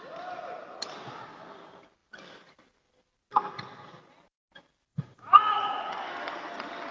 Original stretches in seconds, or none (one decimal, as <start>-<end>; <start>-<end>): 0.0-4.9; 5.9-6.9